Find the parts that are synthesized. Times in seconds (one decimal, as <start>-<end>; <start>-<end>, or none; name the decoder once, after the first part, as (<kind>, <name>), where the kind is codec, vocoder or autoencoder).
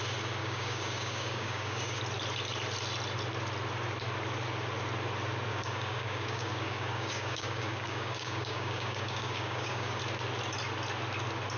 0.4-2.0 (codec, DAC); 5.5-10.0